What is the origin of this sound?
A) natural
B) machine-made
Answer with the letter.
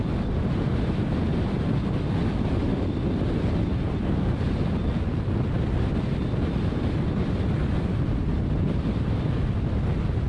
A